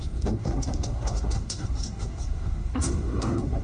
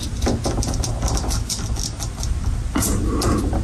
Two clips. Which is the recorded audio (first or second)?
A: second